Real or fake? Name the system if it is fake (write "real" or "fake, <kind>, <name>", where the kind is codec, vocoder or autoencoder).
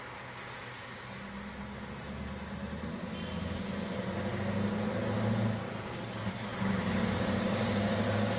real